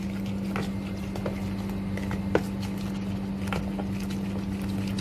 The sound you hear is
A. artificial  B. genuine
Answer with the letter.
B